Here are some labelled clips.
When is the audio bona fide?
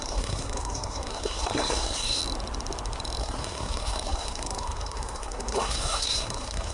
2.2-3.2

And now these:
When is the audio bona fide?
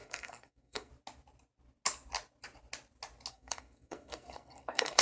0.9-3.3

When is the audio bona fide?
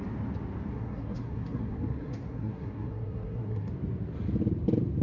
0.0-0.7; 3.7-5.0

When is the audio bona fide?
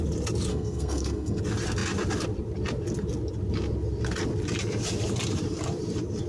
0.0-0.5; 1.4-6.3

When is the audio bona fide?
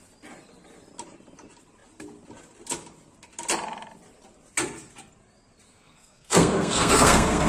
0.0-5.7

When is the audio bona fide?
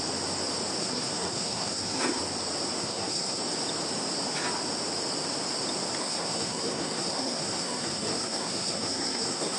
0.0-0.8; 2.2-2.8; 3.4-6.0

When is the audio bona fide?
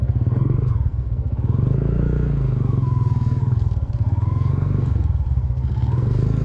none